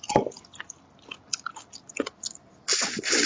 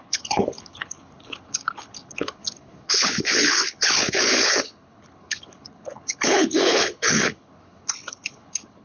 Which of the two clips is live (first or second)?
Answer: first